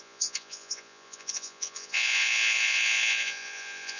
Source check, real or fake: fake